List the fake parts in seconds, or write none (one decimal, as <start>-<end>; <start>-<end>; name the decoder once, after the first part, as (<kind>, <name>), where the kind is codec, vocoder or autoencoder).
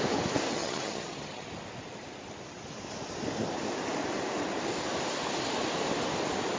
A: 0.5-1.5 (vocoder, HiFi-GAN)